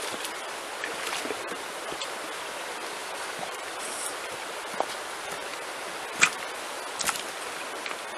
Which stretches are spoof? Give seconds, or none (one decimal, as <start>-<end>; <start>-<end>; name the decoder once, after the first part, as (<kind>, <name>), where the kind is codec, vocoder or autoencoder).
3.0-3.8 (vocoder, BigVGAN v2)